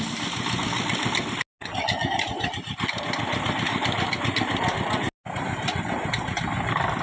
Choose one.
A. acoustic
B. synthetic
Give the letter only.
A